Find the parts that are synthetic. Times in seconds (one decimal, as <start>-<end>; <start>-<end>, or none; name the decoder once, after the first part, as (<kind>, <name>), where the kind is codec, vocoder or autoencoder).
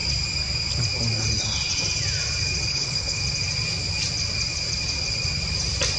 2.7-3.2 (codec, HILCodec)